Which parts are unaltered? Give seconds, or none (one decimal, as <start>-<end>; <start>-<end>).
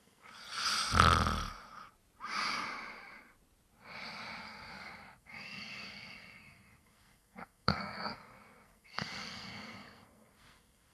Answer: 0.4-4.4